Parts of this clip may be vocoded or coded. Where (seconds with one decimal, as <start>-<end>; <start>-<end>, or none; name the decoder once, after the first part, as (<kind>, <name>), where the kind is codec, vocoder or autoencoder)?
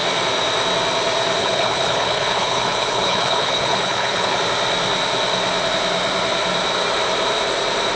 1.4-4.4 (codec, HILCodec)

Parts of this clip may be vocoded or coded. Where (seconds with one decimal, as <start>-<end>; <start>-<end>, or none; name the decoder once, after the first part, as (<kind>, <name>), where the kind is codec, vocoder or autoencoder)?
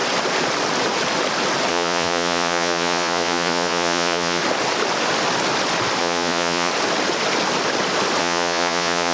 1.7-4.4 (vocoder, Vocos); 6.0-6.7; 8.2-9.1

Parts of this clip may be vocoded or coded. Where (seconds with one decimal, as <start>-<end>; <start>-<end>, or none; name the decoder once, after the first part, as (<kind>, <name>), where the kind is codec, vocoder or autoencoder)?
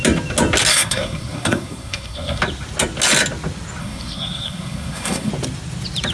0.7-2.4 (codec, SNAC); 3.8-5.3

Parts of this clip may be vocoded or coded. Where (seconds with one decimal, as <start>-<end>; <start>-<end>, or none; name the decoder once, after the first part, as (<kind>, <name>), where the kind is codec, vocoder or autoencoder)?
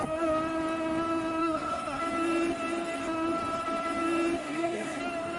1.4-2.0 (codec, SNAC); 4.4-5.0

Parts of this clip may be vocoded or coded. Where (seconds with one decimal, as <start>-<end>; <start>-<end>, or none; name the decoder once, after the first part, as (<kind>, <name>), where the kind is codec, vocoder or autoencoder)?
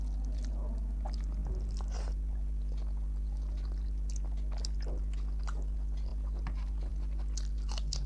none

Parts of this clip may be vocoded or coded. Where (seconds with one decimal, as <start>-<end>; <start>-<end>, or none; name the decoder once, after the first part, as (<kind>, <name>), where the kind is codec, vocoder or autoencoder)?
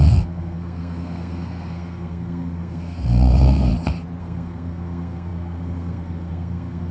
0.0-3.7 (codec, SNAC); 4.2-6.9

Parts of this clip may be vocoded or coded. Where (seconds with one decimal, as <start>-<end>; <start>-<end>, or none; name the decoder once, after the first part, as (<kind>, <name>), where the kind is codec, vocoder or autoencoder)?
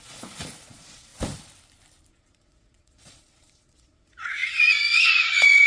0.0-1.1 (vocoder, Vocos); 2.1-5.7